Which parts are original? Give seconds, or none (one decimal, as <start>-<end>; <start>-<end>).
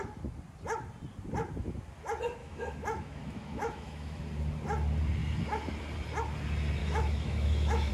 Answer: 0.0-2.4; 4.2-6.8